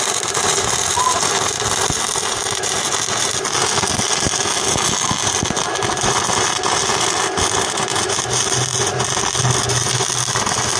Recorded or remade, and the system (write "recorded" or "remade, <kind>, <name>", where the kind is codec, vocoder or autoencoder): recorded